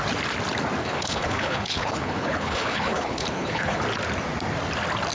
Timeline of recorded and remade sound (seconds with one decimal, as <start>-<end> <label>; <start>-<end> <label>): 0.0-0.8 recorded; 0.8-3.8 remade; 3.8-5.1 recorded